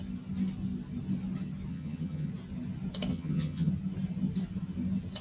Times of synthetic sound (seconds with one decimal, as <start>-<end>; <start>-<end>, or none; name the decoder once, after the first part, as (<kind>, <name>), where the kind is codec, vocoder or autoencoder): 1.7-2.3 (vocoder, HiFi-GAN); 3.1-3.7